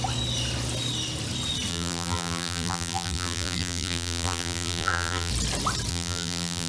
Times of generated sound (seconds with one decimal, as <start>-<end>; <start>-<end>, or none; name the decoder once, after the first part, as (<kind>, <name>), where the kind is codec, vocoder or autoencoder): 1.7-5.3 (vocoder, BigVGAN v2); 5.9-6.7